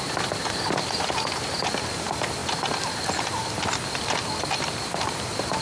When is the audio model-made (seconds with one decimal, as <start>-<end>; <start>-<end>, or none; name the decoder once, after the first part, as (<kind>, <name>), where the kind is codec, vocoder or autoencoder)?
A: none

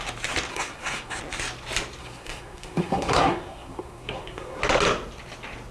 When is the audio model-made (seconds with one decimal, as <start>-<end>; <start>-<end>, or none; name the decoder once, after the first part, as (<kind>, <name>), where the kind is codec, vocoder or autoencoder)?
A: 0.5-1.2 (codec, SNAC); 2.0-4.6

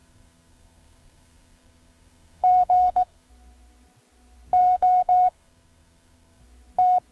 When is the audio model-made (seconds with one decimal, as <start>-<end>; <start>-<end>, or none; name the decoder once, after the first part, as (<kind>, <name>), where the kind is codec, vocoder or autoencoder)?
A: 0.0-3.3 (codec, SNAC); 4.6-6.4

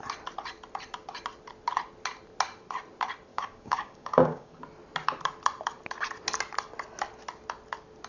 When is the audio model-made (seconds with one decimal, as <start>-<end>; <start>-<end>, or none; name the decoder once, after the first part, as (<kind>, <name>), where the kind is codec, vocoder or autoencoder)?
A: 3.3-4.6 (codec, DAC)

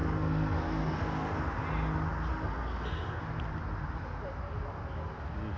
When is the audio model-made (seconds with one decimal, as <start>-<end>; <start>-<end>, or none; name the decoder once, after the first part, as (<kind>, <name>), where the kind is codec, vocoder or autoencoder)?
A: 0.0-1.4 (codec, SNAC); 2.3-3.2

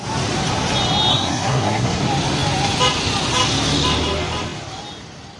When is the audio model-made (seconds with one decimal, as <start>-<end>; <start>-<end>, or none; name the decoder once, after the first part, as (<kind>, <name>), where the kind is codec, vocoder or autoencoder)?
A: 1.1-2.0 (codec, SNAC)

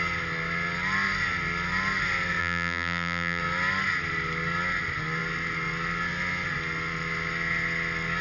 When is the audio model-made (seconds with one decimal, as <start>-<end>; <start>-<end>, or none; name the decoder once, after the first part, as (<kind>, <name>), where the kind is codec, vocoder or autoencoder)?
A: 2.4-3.4 (vocoder, BigVGAN v2)